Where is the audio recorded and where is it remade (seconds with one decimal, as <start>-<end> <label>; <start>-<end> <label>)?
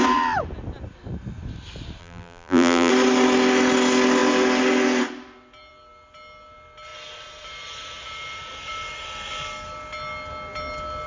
0.0-2.0 recorded; 2.0-2.9 remade; 2.9-11.1 recorded